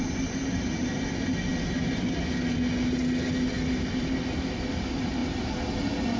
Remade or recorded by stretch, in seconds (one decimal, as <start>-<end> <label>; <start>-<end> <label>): 0.0-6.2 recorded